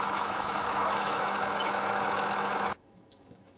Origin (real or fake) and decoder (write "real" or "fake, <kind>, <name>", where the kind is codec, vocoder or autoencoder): fake, autoencoder, DAC-VAE